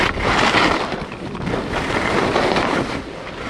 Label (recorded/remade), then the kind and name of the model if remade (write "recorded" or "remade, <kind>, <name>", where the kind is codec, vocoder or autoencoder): recorded